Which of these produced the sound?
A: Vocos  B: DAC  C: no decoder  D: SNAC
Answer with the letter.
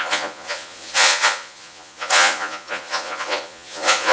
A